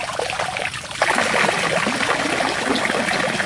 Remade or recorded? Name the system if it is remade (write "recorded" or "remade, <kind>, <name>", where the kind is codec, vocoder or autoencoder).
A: recorded